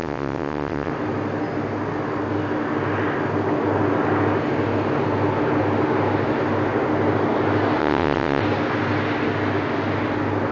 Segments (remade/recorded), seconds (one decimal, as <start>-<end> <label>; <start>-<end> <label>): 0.0-0.9 remade; 0.9-7.8 recorded; 7.8-8.4 remade; 8.4-10.5 recorded